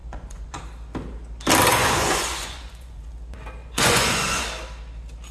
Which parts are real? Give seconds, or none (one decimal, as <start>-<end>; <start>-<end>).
0.6-1.7; 3.1-3.6; 4.4-5.3